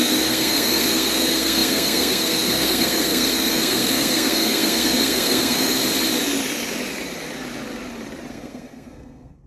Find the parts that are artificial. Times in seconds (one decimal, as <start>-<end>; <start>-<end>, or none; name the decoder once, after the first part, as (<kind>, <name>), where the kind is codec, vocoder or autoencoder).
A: 0.0-5.8 (codec, SNAC); 8.3-9.5